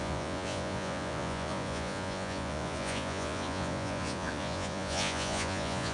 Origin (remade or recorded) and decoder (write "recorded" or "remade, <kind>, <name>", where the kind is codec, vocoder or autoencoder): remade, vocoder, Vocos